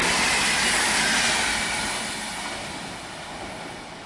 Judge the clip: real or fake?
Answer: real